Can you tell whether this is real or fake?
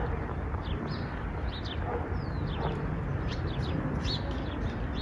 real